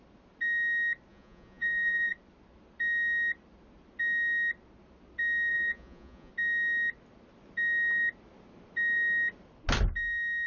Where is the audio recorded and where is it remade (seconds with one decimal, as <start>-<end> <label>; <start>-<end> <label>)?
0.0-1.1 recorded; 1.1-2.1 remade; 2.1-5.5 recorded; 5.5-6.3 remade; 6.3-10.5 recorded